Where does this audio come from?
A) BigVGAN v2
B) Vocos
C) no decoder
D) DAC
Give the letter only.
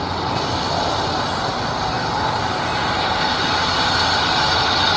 C